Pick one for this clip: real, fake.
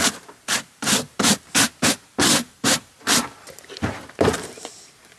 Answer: real